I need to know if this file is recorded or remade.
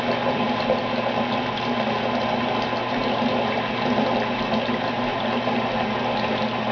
recorded